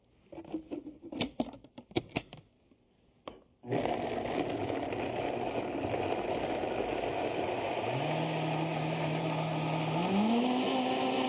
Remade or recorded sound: recorded